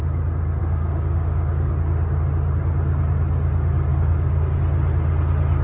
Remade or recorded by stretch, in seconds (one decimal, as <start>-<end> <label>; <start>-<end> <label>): 0.0-0.6 recorded; 0.6-1.7 remade; 1.7-3.9 recorded; 3.9-4.6 remade; 4.6-5.6 recorded